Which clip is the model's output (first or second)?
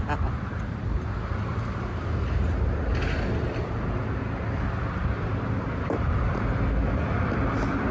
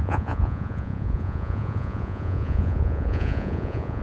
second